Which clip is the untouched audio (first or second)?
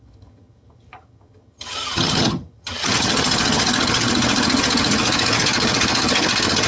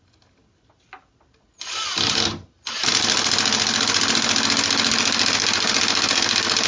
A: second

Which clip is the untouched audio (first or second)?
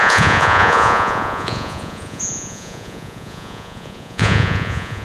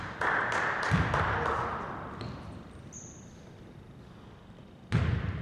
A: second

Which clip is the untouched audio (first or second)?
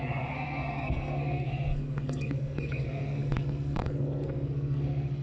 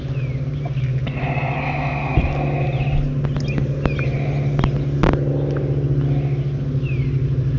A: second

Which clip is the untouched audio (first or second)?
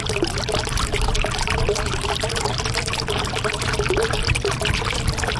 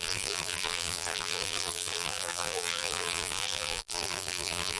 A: first